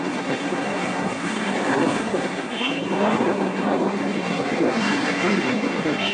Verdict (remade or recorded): remade